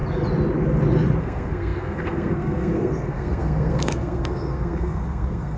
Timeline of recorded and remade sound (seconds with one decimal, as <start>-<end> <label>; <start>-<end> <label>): 0.0-1.2 recorded; 1.2-5.6 remade